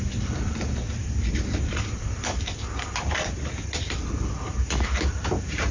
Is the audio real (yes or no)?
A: yes